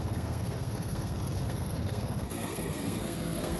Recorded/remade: remade